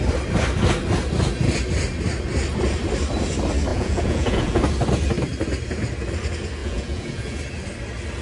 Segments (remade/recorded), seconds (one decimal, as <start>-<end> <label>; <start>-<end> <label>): 0.0-3.7 recorded; 3.7-4.6 remade; 4.6-6.6 recorded; 6.6-7.4 remade; 7.4-8.2 recorded